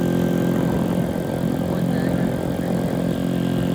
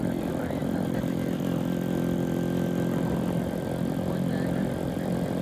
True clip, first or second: first